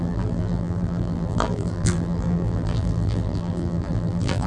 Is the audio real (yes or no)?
no